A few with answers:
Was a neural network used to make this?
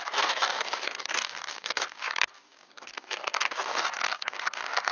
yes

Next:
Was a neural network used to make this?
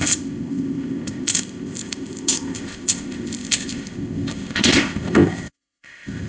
yes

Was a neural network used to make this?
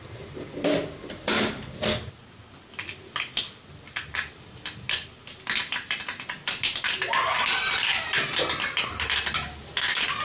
no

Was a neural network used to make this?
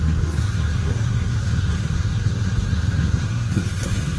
yes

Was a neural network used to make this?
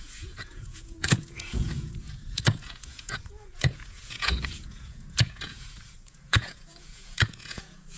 yes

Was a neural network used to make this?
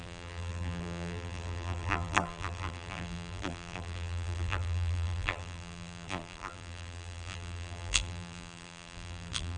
yes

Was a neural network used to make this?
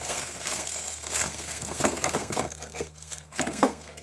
yes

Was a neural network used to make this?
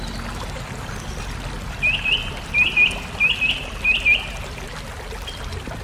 no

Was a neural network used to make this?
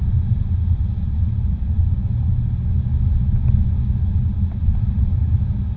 no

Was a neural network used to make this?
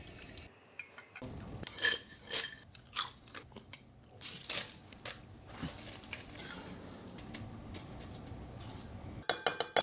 no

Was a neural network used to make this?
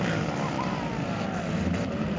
no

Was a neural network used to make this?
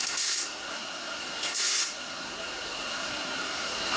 yes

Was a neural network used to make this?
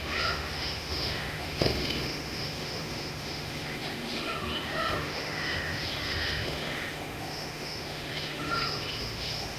yes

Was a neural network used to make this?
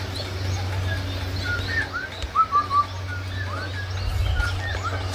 no